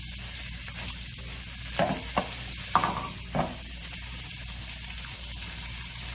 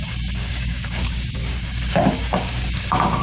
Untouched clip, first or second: first